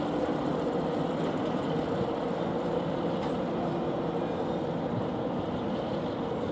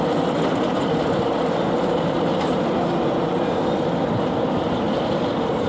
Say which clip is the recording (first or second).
first